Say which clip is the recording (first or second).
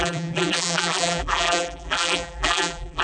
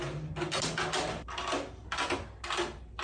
second